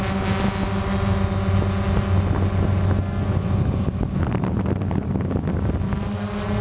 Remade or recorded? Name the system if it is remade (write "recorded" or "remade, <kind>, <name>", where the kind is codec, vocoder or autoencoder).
recorded